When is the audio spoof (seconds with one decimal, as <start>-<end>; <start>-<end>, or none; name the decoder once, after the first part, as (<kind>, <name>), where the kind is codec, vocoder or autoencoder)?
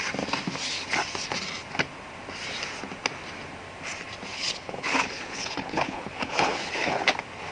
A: 4.3-7.1 (codec, HILCodec)